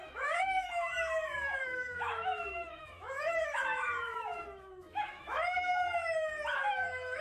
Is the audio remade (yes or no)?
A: yes